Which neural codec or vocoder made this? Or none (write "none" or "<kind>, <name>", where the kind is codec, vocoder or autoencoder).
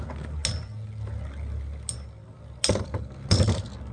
none